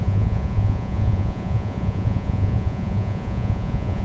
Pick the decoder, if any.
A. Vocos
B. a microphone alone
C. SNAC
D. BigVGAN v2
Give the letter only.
A